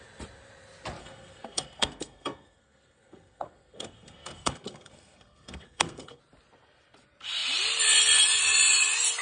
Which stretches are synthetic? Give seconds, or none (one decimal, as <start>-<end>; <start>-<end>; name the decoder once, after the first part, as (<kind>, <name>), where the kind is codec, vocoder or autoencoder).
1.0-6.2 (codec, SNAC)